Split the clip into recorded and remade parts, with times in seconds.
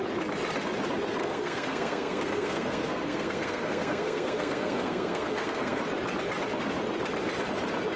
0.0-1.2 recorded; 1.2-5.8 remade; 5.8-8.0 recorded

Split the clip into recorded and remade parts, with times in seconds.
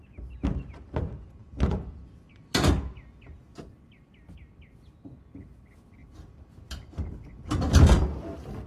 0.0-1.4 recorded; 1.4-4.0 remade; 4.0-6.0 recorded; 6.0-8.7 remade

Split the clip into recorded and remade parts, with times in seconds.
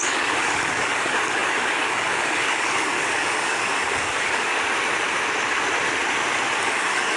0.0-4.5 remade; 4.5-6.6 recorded; 6.6-7.2 remade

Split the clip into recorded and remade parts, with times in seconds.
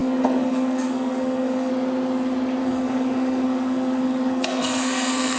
0.0-1.7 remade; 1.7-2.6 recorded; 2.6-5.4 remade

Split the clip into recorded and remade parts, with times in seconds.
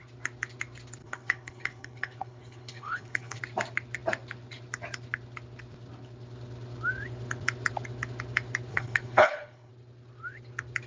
0.0-1.0 recorded; 1.0-3.4 remade; 3.4-8.7 recorded; 8.7-9.7 remade; 9.7-10.9 recorded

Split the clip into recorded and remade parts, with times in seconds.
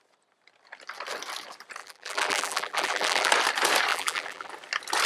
0.0-1.8 recorded; 1.8-3.3 remade; 3.3-3.9 recorded; 3.9-4.5 remade; 4.5-5.1 recorded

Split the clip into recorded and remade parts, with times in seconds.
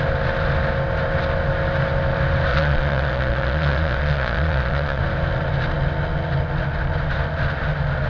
0.0-2.5 recorded; 2.5-5.0 remade; 5.0-8.1 recorded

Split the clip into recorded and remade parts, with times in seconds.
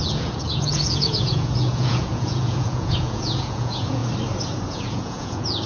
0.0-4.0 remade; 4.0-4.7 recorded; 4.7-5.7 remade